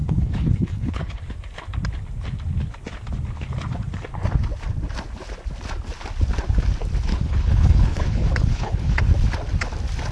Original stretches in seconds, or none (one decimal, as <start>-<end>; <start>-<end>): 1.2-7.1; 9.0-10.1